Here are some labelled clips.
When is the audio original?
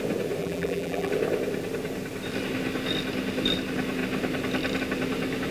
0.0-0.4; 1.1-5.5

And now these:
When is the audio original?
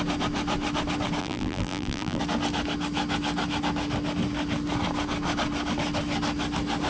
0.0-1.2; 2.2-6.9